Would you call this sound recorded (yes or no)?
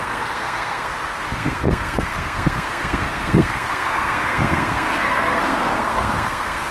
no